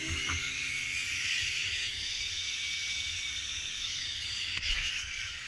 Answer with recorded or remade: remade